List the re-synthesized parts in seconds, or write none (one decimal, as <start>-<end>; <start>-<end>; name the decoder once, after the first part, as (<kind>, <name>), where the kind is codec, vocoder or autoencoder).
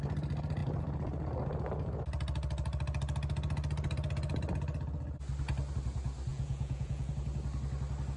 6.3-7.1 (vocoder, Vocos)